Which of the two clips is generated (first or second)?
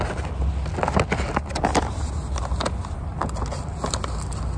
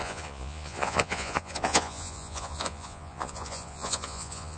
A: second